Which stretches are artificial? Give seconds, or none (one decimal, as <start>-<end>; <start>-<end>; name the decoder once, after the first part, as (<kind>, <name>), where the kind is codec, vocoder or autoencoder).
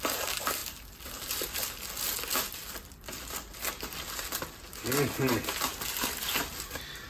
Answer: 0.6-1.2 (vocoder, BigVGAN v2)